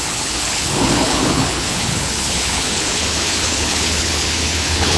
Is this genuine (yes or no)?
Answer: no